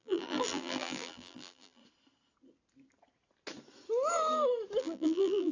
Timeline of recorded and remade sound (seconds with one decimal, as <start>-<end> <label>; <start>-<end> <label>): 0.0-1.8 remade; 1.8-4.8 recorded; 4.8-5.5 remade

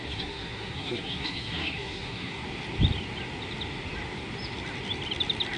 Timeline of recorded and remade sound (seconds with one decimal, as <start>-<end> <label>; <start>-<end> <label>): 0.0-2.4 remade; 2.4-5.6 recorded

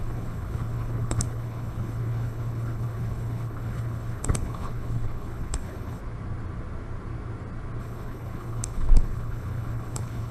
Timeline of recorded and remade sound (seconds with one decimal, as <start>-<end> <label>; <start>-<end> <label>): 0.0-6.0 remade; 6.0-7.8 recorded; 7.8-10.3 remade

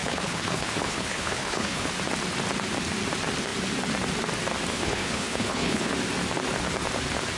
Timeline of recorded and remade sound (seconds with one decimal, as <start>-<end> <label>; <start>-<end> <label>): 0.0-1.9 remade; 1.9-4.7 recorded; 4.7-5.9 remade; 5.9-7.4 recorded

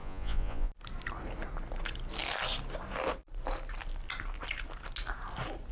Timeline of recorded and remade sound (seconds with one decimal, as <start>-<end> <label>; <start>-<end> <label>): 0.0-0.7 remade; 0.7-5.7 recorded